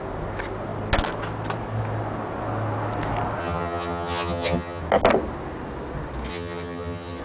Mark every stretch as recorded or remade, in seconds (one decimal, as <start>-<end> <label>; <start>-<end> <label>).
0.0-3.4 recorded; 3.4-4.8 remade; 4.8-6.3 recorded; 6.3-7.2 remade